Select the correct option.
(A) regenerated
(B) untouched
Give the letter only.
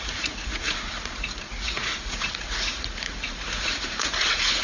A